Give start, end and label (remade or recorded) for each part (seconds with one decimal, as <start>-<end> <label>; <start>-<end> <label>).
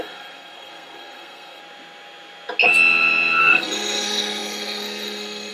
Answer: 0.0-1.6 remade; 1.6-3.4 recorded; 3.4-5.5 remade